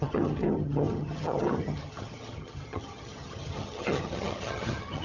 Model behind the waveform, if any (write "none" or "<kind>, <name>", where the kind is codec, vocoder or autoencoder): vocoder, HiFi-GAN